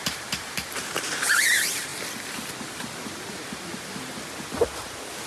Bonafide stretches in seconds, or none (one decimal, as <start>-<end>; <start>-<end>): 1.9-5.3